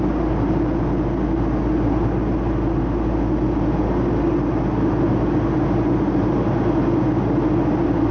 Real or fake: real